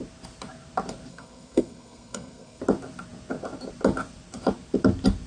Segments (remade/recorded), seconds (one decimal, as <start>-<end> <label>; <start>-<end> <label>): 0.0-1.1 recorded; 1.1-2.6 remade; 2.6-5.3 recorded